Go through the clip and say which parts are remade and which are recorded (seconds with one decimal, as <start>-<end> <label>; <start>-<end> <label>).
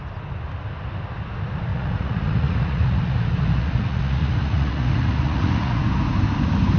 0.0-1.7 recorded; 1.7-5.8 remade; 5.8-6.8 recorded